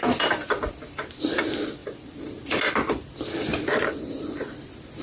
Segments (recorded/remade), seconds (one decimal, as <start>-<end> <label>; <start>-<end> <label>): 0.0-1.4 remade; 1.4-1.8 recorded; 1.8-5.0 remade